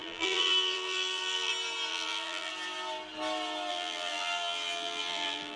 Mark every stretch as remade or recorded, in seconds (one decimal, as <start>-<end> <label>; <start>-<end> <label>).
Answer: 0.0-1.5 remade; 1.5-1.9 recorded; 1.9-2.5 remade; 2.5-3.7 recorded; 3.7-5.6 remade